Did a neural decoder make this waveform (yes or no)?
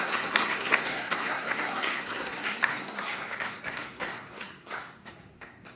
yes